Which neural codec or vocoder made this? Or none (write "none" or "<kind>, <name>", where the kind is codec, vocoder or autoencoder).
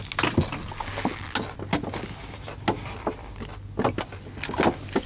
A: none